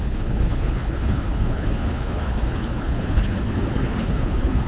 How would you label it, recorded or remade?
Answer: remade